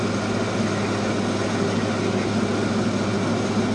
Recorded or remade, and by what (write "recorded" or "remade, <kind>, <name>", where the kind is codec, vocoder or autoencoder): recorded